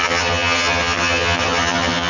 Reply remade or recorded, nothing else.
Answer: remade